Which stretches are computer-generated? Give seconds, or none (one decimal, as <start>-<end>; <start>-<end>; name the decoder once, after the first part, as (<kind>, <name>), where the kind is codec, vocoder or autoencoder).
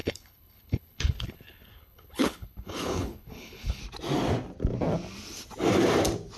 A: 0.0-3.8 (codec, HILCodec)